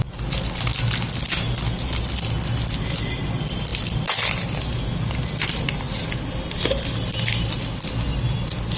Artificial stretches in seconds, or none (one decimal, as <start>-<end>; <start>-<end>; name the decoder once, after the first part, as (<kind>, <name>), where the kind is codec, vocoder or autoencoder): none